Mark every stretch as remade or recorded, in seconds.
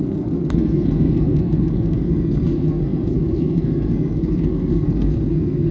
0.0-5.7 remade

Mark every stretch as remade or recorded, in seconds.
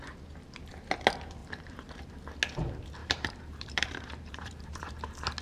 0.0-1.4 recorded; 1.4-2.1 remade; 2.1-3.0 recorded; 3.0-4.9 remade; 4.9-5.4 recorded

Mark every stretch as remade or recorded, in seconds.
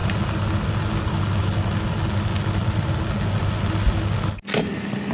0.0-5.1 recorded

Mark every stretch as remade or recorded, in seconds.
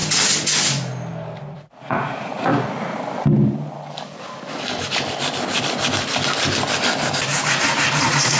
0.0-1.4 recorded; 1.4-2.5 remade; 2.5-7.5 recorded; 7.5-8.4 remade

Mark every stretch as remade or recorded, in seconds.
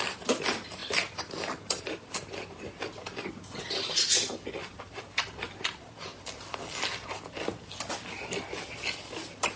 0.0-9.6 recorded